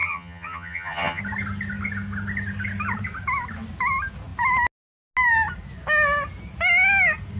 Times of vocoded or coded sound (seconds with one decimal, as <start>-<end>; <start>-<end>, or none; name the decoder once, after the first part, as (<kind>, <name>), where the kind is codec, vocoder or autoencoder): 0.0-1.2 (vocoder, HiFi-GAN)